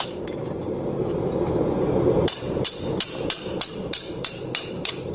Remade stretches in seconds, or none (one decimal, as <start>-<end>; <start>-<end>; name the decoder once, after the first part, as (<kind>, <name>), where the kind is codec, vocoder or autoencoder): 0.0-5.1 (vocoder, BigVGAN v2)